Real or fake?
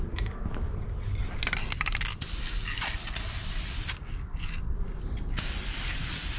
real